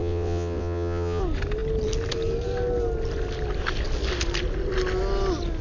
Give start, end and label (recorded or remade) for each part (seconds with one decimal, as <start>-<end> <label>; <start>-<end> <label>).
0.0-1.2 remade; 1.2-5.6 recorded